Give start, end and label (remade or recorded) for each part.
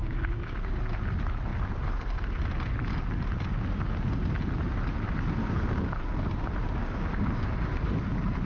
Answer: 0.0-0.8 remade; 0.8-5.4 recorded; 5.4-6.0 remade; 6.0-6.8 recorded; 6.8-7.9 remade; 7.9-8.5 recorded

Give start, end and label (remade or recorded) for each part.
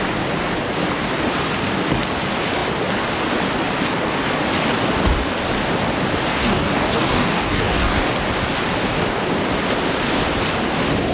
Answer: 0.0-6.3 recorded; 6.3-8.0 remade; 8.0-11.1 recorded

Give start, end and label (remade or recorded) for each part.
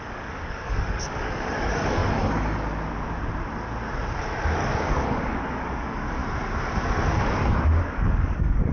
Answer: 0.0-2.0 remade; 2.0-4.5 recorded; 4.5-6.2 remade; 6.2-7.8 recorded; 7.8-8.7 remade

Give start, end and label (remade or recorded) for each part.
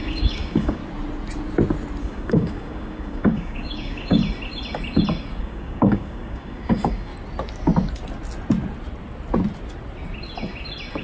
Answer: 0.0-0.8 remade; 0.8-2.0 recorded; 2.0-4.2 remade; 4.2-5.4 recorded; 5.4-7.1 remade; 7.1-11.0 recorded